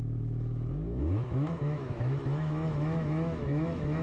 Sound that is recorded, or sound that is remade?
remade